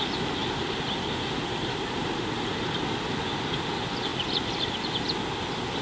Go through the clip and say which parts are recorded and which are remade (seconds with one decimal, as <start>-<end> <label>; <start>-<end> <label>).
0.0-4.1 recorded; 4.1-4.7 remade; 4.7-5.8 recorded